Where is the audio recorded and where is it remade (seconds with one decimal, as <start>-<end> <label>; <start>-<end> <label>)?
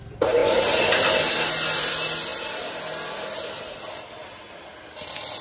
0.0-5.4 recorded